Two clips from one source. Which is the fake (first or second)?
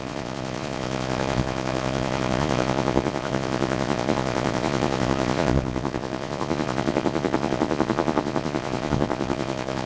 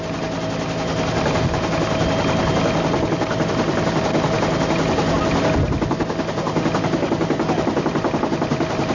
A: first